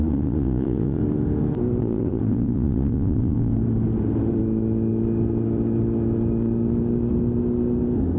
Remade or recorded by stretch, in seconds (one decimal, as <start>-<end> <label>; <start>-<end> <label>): 0.0-1.0 remade; 1.0-1.8 recorded; 1.8-3.5 remade; 3.5-8.2 recorded